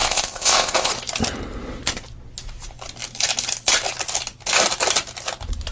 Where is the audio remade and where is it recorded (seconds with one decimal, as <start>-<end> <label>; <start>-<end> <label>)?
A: 0.0-0.9 remade; 0.9-5.7 recorded